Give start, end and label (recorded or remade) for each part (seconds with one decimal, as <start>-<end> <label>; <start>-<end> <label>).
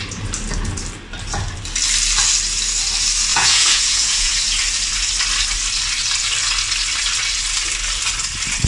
0.0-3.3 recorded; 3.3-4.3 remade; 4.3-8.7 recorded